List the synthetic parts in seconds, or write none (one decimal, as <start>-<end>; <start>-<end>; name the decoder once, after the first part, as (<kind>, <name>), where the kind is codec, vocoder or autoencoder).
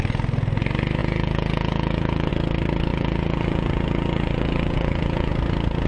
1.0-2.3 (vocoder, Vocos); 2.9-5.3